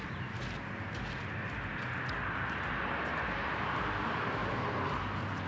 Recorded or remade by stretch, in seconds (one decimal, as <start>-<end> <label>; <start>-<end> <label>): 0.0-5.5 recorded

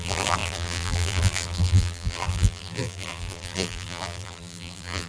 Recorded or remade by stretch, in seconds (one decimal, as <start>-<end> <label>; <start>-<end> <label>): 0.0-5.1 remade

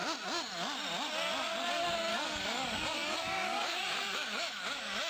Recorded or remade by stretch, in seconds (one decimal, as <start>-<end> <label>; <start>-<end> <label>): 0.0-2.1 recorded; 2.1-5.1 remade

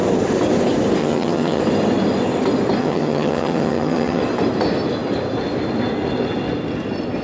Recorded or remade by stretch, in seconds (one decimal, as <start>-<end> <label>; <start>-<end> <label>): 0.0-1.0 recorded; 1.0-1.6 remade; 1.6-2.8 recorded; 2.8-4.2 remade; 4.2-7.2 recorded

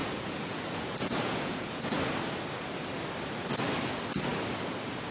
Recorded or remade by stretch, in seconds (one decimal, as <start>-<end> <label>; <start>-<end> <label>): 0.0-2.0 remade; 2.0-5.1 recorded

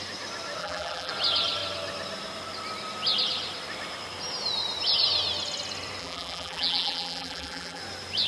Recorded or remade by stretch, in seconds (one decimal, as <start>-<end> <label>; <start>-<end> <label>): 0.0-0.6 recorded; 0.6-1.1 remade; 1.1-6.0 recorded; 6.0-7.8 remade; 7.8-8.3 recorded

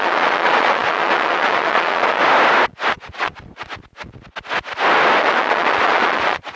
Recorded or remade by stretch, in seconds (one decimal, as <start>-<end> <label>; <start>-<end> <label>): 0.0-2.2 remade; 2.2-2.9 recorded; 2.9-3.7 remade; 3.7-5.2 recorded; 5.2-6.6 remade

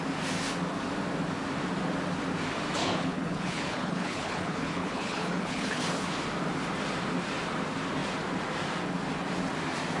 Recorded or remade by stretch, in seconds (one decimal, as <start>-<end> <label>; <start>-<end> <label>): 0.0-2.8 recorded; 2.8-5.8 remade; 5.8-10.0 recorded